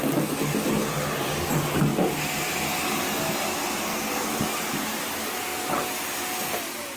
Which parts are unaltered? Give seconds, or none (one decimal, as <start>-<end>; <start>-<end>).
0.0-3.9; 4.6-7.0